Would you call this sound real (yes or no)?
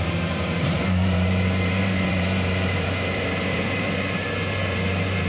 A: no